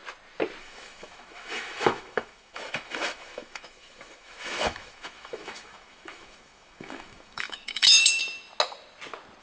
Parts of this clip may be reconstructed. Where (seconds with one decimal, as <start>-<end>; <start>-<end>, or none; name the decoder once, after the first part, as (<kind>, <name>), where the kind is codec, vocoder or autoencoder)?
0.6-8.2 (autoencoder, DAC-VAE)